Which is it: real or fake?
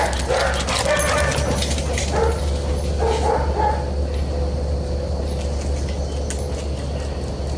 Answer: real